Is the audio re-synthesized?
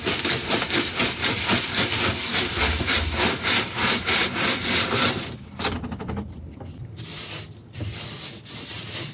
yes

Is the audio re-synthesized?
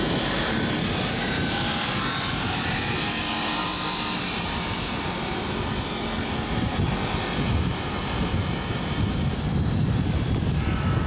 yes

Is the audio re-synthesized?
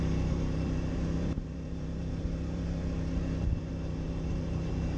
yes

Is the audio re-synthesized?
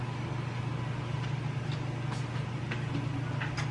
no